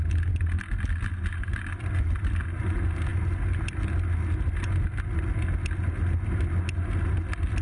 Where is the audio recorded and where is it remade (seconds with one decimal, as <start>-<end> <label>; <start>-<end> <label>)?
0.0-7.6 recorded